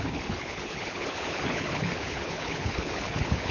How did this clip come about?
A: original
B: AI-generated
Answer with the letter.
B